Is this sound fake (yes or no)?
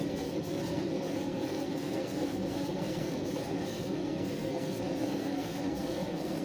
yes